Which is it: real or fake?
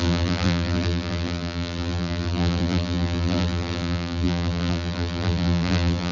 fake